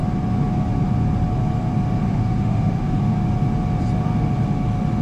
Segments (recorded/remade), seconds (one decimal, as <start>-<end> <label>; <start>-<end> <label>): 0.0-2.0 recorded; 2.0-3.0 remade; 3.0-5.0 recorded